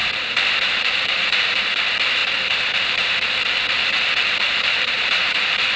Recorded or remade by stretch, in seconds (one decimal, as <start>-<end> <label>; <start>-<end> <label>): 0.0-1.7 remade; 1.7-2.2 recorded; 2.2-5.8 remade